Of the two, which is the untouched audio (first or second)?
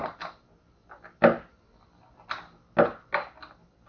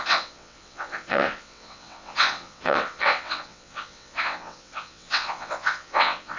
first